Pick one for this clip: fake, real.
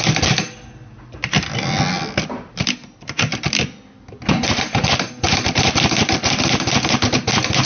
real